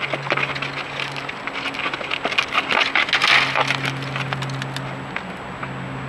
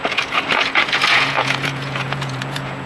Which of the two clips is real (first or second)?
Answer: first